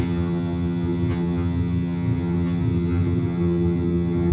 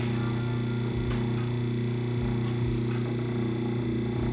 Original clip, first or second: second